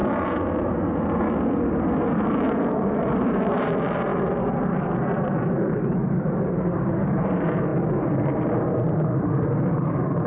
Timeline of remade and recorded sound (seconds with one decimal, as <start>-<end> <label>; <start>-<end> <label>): 0.0-2.5 recorded; 2.5-10.3 remade